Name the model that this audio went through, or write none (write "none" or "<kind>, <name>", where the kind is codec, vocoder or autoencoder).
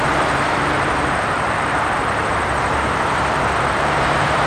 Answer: vocoder, BigVGAN v2